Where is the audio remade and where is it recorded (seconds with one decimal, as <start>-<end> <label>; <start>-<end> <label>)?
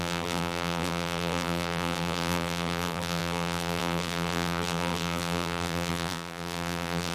0.0-7.1 remade